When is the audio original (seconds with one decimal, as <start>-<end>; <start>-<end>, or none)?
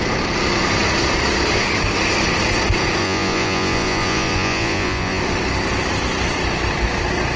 0.0-3.0; 5.2-7.4